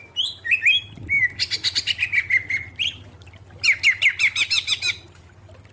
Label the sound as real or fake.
real